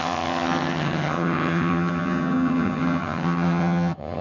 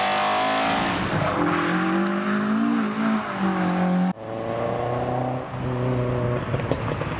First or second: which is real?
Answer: second